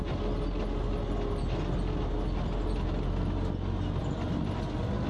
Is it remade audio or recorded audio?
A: recorded